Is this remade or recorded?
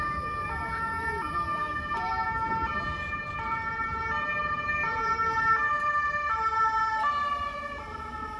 remade